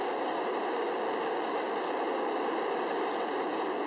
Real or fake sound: real